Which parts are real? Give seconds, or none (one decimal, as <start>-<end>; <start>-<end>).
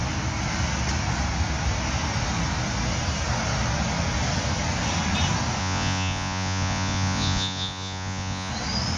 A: 0.0-5.6; 8.5-9.0